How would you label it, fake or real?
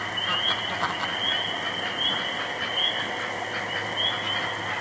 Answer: real